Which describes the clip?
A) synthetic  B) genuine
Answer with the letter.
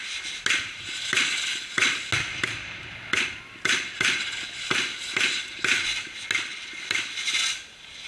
B